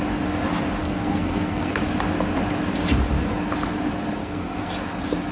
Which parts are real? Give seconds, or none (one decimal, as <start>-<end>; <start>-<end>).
0.0-0.8; 1.8-4.2; 4.7-5.3